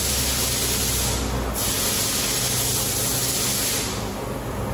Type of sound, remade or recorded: recorded